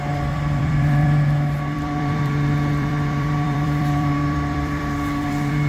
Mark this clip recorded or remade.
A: remade